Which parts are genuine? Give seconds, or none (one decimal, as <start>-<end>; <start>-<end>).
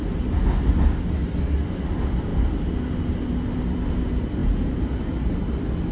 0.0-5.9